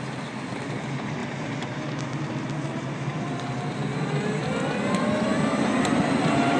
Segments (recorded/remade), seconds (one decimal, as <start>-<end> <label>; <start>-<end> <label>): 0.0-6.6 recorded